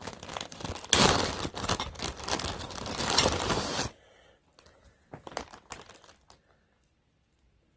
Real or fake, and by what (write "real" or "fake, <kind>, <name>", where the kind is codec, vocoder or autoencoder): real